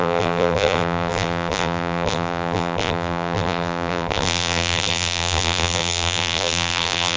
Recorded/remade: remade